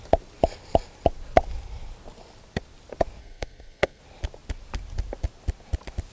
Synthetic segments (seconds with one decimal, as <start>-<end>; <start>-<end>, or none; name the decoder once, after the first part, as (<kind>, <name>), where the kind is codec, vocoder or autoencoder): 3.2-4.0 (codec, SNAC)